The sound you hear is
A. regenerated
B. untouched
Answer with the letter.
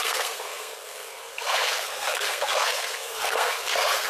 A